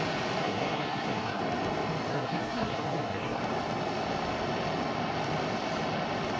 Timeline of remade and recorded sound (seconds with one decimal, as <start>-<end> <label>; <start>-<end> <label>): 0.0-0.4 recorded; 0.4-1.4 remade; 1.4-2.1 recorded; 2.1-3.4 remade; 3.4-6.4 recorded